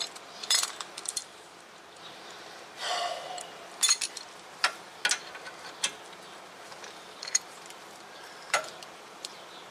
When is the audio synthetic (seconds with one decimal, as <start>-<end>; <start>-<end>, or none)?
0.0-2.8; 3.3-4.9; 7.0-9.7